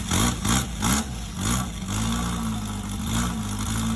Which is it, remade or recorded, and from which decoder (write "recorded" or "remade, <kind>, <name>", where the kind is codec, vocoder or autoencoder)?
recorded